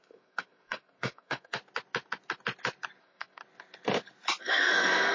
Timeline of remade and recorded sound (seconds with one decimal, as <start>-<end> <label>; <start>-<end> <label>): 0.0-1.6 remade; 1.6-3.0 recorded; 3.0-3.4 remade; 3.4-4.4 recorded; 4.4-5.1 remade